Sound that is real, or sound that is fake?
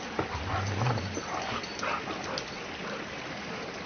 real